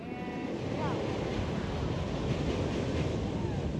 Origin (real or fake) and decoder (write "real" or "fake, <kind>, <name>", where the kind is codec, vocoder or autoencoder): real